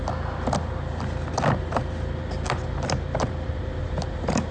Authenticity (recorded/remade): recorded